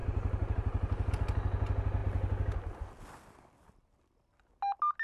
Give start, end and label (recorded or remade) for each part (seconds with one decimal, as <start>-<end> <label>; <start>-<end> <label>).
0.0-5.0 recorded